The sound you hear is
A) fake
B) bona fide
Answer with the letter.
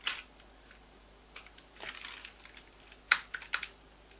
B